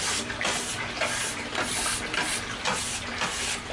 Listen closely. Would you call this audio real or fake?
real